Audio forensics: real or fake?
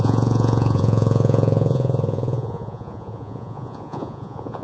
fake